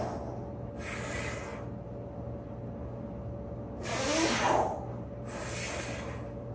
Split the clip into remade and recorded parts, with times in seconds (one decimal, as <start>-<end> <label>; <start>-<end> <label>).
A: 0.0-6.5 recorded